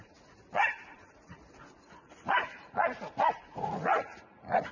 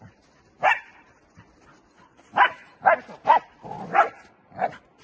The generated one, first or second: first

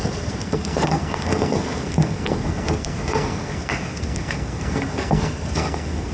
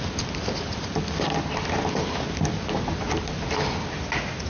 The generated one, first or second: first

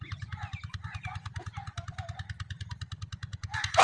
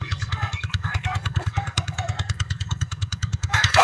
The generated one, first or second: second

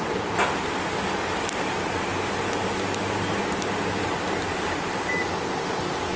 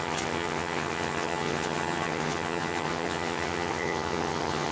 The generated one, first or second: second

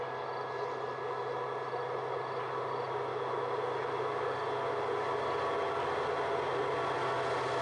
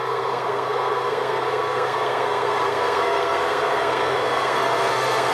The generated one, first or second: second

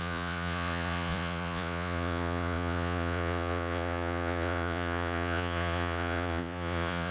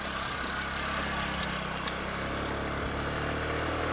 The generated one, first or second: first